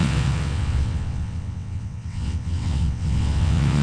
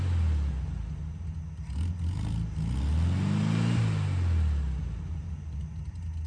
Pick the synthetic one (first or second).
first